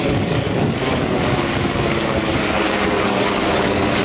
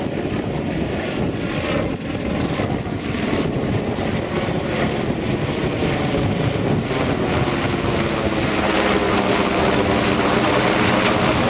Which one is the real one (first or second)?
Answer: second